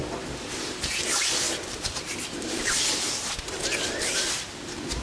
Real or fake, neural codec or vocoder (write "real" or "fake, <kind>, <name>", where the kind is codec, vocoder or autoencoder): real